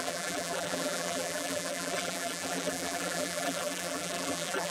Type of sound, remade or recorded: remade